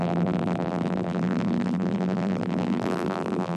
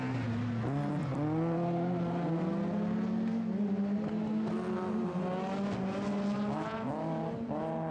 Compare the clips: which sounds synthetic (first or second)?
first